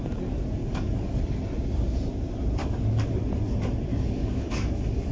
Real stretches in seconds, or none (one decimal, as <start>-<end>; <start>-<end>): 0.0-0.6; 1.2-2.6; 3.2-3.9; 4.6-5.1